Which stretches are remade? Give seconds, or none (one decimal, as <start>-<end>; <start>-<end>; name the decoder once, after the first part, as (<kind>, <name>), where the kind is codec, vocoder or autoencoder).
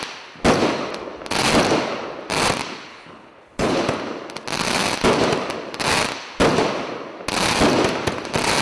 2.9-3.8 (codec, HILCodec)